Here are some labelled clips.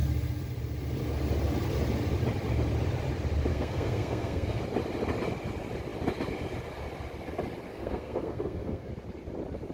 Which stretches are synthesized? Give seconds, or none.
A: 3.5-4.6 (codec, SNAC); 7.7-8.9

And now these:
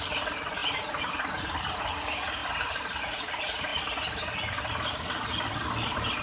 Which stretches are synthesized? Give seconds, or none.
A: 0.0-2.4 (vocoder, BigVGAN v2); 3.0-3.7; 4.6-6.2

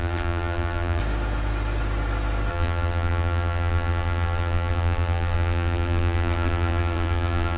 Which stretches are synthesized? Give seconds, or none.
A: 0.0-1.0 (vocoder, BigVGAN v2); 2.5-7.6

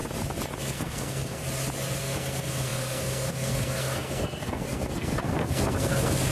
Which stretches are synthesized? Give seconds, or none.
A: 0.6-1.4 (codec, SNAC); 2.0-6.3

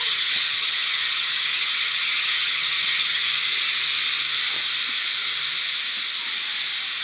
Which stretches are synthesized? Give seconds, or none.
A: 0.0-3.2 (vocoder, HiFi-GAN)

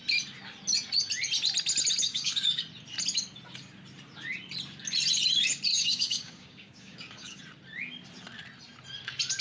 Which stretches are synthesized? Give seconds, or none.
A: 2.0-2.6 (codec, DAC); 5.7-7.4